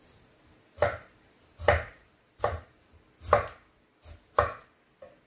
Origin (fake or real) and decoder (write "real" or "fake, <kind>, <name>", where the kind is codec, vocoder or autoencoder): real